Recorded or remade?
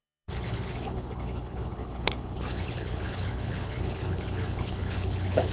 remade